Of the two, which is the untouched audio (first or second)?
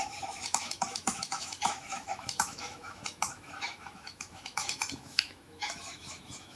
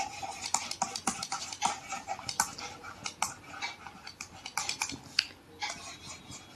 second